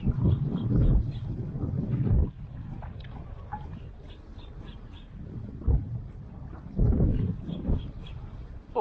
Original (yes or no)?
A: yes